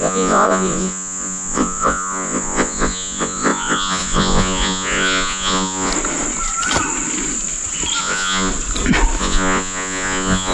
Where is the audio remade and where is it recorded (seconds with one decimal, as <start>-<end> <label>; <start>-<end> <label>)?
0.0-5.9 remade; 5.9-8.0 recorded; 8.0-8.5 remade; 8.5-9.2 recorded; 9.2-10.5 remade